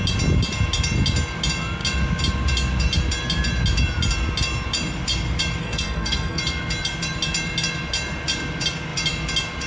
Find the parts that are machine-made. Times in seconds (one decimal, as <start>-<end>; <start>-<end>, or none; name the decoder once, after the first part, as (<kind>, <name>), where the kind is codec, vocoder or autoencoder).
5.6-6.4 (codec, SNAC)